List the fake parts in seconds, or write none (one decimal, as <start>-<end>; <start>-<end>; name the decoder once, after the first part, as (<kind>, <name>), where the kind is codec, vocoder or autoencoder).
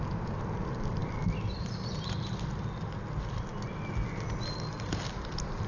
none